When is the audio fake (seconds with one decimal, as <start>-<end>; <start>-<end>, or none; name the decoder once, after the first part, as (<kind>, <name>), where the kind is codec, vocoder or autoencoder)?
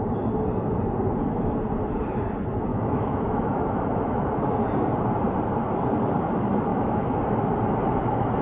2.7-4.3 (autoencoder, DAC-VAE); 6.7-7.2